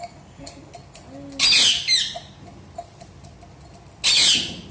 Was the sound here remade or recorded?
recorded